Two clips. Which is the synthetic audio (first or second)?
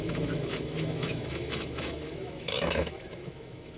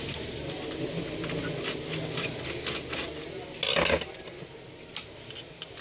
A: first